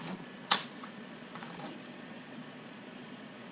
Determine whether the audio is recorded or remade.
remade